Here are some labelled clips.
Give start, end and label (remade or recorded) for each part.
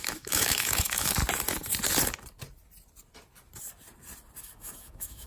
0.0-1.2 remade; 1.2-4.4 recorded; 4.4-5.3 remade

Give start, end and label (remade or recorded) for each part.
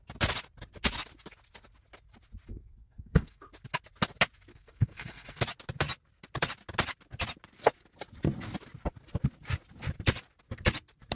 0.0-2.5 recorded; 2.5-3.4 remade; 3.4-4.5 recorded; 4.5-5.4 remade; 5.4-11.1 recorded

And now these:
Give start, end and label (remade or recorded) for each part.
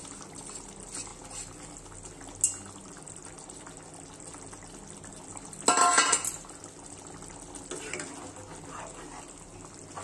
0.0-10.0 recorded